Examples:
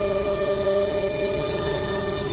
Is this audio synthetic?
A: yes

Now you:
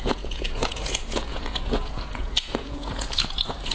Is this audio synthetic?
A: yes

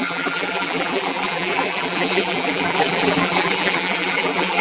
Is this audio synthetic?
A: yes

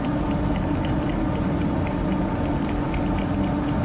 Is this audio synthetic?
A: no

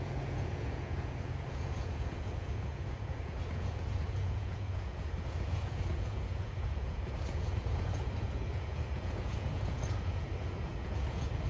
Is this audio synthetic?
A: yes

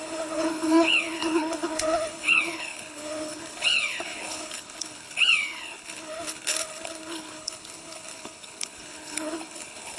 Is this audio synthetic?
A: yes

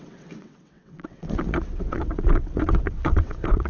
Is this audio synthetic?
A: yes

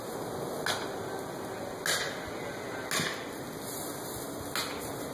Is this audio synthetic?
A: no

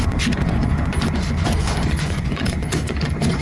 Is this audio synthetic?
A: yes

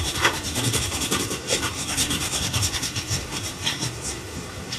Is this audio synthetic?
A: yes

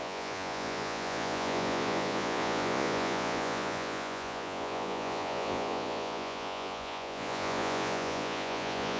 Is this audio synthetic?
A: yes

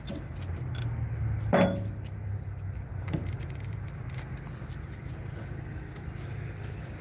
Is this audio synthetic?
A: no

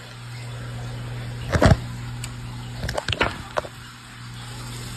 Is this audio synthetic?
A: no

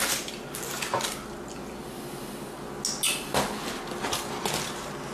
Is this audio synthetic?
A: no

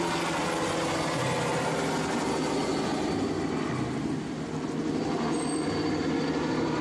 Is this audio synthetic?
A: no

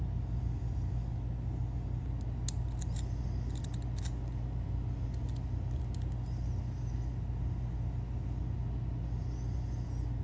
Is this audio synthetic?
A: no